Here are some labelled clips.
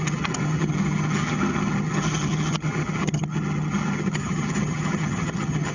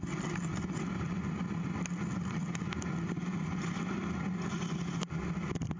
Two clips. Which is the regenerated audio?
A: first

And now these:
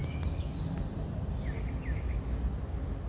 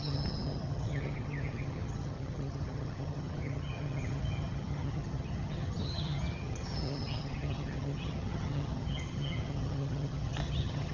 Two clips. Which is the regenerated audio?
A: second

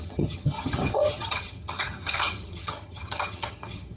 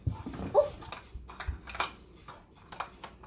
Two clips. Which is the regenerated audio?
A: first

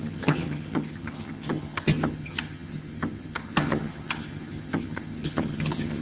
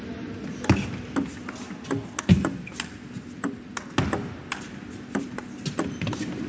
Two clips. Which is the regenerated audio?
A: first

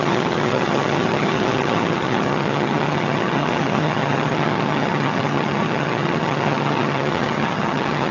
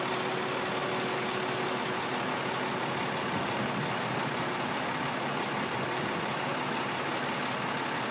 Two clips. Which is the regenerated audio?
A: first